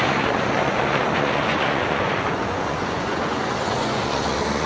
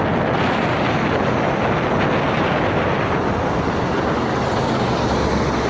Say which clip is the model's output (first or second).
first